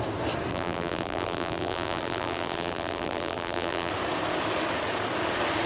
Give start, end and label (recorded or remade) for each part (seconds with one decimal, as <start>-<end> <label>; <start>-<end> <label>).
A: 0.0-0.5 recorded; 0.5-3.9 remade; 3.9-5.7 recorded